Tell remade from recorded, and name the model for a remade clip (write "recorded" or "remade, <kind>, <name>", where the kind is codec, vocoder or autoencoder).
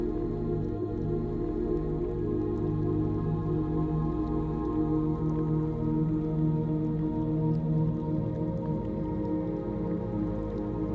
recorded